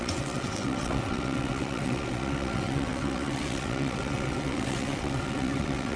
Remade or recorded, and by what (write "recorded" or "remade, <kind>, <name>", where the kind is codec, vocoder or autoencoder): remade, vocoder, WaveNeXt